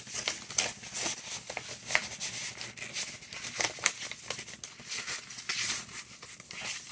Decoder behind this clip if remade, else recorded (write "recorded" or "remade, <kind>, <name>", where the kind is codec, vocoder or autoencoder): recorded